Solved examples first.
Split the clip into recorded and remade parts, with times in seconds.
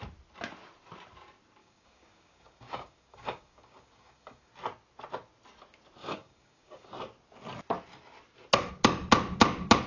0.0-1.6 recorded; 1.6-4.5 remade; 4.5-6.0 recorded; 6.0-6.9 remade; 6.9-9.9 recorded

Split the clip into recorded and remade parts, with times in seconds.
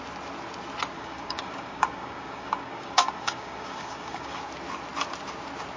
0.0-0.9 recorded; 0.9-4.4 remade; 4.4-5.8 recorded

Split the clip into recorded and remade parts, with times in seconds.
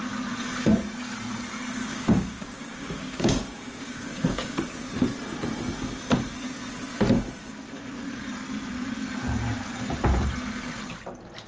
0.0-1.9 recorded; 1.9-4.6 remade; 4.6-11.5 recorded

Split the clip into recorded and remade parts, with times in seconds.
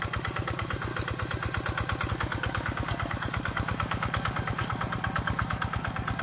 0.0-0.9 remade; 0.9-2.1 recorded; 2.1-6.2 remade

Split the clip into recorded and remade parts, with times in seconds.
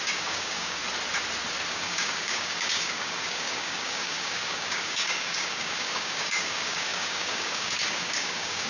0.0-0.8 remade; 0.8-1.7 recorded; 1.7-8.7 remade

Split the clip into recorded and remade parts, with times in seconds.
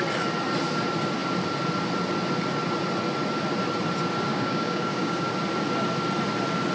0.0-4.3 recorded; 4.3-5.3 remade; 5.3-6.7 recorded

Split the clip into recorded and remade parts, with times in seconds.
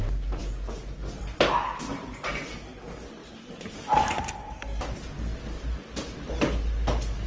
0.0-7.3 recorded